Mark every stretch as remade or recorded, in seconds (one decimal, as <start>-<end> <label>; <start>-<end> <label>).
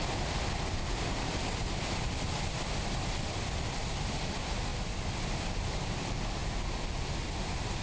0.0-1.4 recorded; 1.4-4.2 remade; 4.2-4.7 recorded; 4.7-5.4 remade; 5.4-7.8 recorded